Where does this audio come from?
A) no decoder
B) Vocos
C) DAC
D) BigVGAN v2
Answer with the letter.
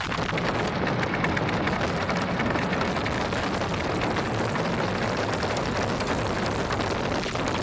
A